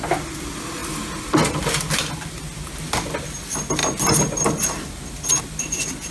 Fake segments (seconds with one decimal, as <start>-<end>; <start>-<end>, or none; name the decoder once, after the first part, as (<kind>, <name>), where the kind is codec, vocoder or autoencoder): none